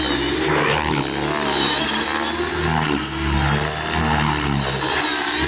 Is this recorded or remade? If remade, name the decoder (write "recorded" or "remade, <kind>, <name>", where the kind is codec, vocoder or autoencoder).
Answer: recorded